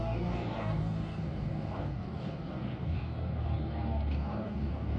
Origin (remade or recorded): remade